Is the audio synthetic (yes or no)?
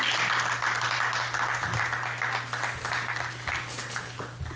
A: no